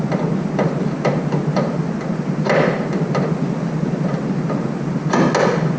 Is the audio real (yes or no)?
yes